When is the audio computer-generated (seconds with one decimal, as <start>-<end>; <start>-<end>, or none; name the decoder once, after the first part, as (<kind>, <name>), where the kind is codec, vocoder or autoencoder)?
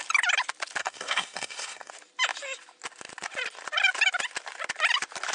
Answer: 0.8-1.9 (codec, SNAC)